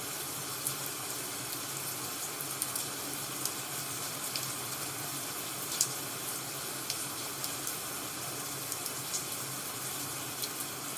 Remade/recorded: recorded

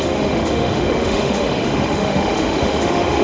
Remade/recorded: remade